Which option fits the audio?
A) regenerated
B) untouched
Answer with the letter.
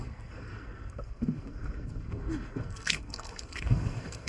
A